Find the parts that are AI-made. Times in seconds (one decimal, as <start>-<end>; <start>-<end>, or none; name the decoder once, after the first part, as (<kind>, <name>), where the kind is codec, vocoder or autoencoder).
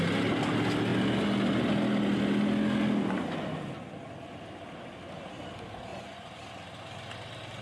5.9-6.4 (vocoder, Vocos)